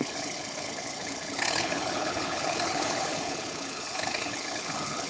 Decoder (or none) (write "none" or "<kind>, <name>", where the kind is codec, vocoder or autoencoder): codec, HILCodec